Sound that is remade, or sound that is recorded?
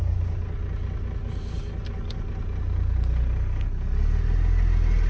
recorded